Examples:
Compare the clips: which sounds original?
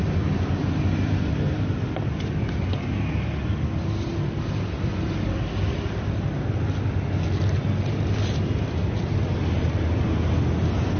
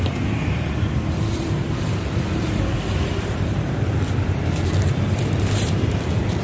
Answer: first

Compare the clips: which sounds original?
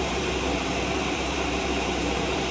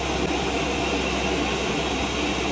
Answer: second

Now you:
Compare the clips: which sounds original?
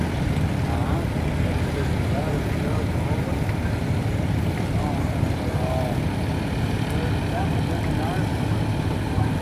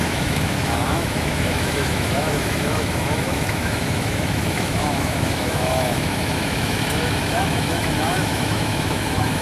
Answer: first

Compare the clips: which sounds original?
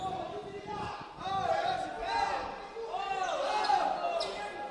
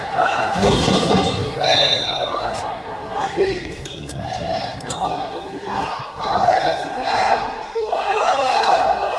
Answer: first